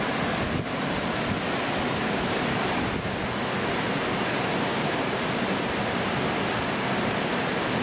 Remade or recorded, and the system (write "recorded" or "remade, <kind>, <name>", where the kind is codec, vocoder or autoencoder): recorded